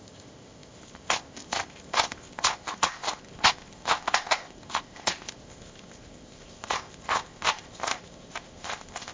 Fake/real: fake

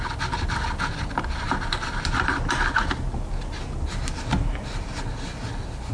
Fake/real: real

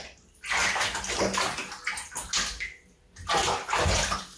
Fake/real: real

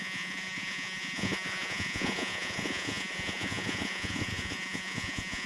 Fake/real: fake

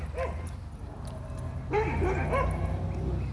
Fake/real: real